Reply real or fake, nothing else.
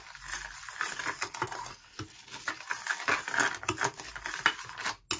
real